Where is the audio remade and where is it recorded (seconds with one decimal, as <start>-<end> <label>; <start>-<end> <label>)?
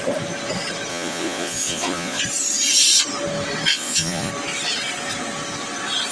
0.0-0.9 recorded; 0.9-2.2 remade; 2.2-3.7 recorded; 3.7-4.3 remade; 4.3-6.1 recorded